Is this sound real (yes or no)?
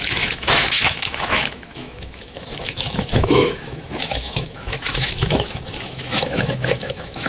no